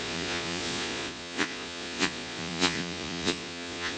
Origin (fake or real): fake